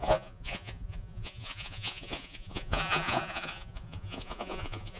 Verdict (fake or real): fake